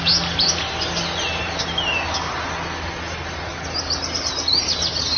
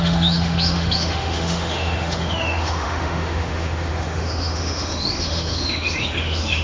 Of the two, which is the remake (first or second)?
second